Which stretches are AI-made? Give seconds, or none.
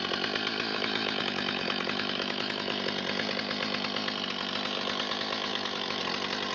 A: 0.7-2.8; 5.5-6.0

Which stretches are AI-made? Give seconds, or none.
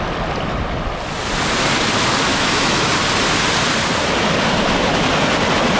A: 2.3-2.9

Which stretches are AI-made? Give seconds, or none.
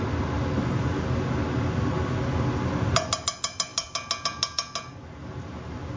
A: none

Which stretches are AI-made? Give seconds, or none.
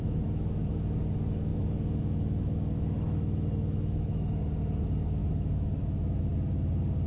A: 0.0-0.6; 1.5-4.4; 5.2-6.2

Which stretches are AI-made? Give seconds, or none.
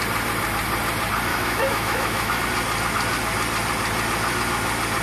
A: 1.3-2.4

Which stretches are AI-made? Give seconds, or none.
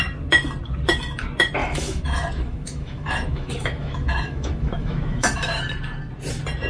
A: 1.6-5.6